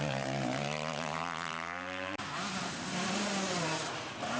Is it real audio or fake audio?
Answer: fake